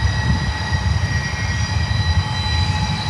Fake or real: real